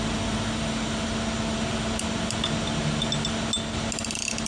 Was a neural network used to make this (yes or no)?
no